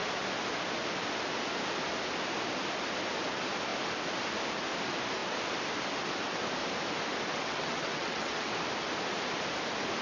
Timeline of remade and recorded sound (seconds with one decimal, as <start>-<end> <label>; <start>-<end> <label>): 0.0-7.3 recorded; 7.3-8.5 remade; 8.5-10.0 recorded